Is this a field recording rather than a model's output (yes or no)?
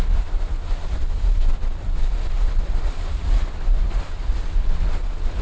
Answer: yes